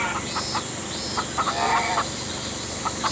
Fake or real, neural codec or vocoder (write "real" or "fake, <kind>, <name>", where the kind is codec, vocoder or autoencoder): real